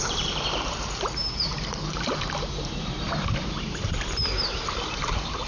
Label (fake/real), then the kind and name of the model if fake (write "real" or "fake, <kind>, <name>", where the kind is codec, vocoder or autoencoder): fake, vocoder, BigVGAN v2